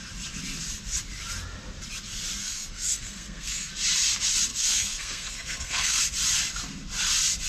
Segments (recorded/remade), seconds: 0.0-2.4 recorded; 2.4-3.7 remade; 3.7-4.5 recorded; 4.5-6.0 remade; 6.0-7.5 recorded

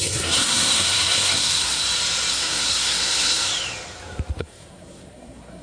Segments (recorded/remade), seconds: 0.0-1.8 remade; 1.8-2.3 recorded; 2.3-3.5 remade; 3.5-4.4 recorded; 4.4-5.6 remade

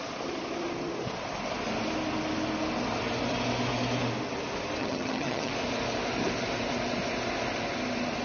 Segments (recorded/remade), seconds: 0.0-4.8 recorded; 4.8-5.5 remade; 5.5-8.2 recorded

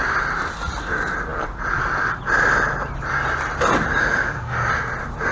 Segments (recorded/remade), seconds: 0.0-4.0 recorded; 4.0-4.7 remade; 4.7-5.3 recorded

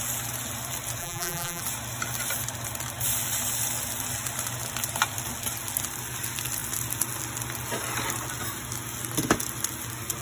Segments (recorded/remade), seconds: 0.0-1.0 recorded; 1.0-1.6 remade; 1.6-10.2 recorded

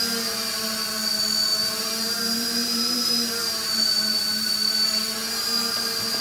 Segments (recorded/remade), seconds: 0.0-1.5 recorded; 1.5-4.5 remade; 4.5-6.2 recorded

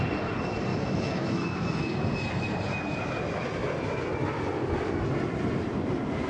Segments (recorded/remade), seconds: 0.0-0.7 recorded; 0.7-1.8 remade; 1.8-6.3 recorded